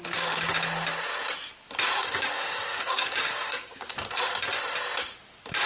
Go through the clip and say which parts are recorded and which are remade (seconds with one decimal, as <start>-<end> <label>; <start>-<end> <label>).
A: 0.0-2.0 recorded; 2.0-3.9 remade; 3.9-5.7 recorded